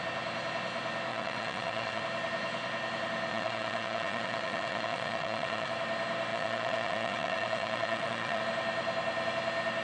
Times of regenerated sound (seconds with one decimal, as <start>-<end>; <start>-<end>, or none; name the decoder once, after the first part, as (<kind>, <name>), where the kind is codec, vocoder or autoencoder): 1.1-2.0 (vocoder, Vocos); 3.3-5.7; 6.3-8.4